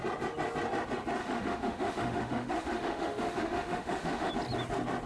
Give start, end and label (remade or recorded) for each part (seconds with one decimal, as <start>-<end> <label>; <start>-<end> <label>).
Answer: 0.0-1.2 recorded; 1.2-4.3 remade; 4.3-5.1 recorded